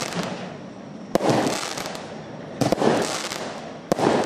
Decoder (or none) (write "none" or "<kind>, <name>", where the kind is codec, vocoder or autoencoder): none